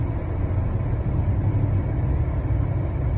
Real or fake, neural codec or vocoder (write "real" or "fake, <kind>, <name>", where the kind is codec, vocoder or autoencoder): real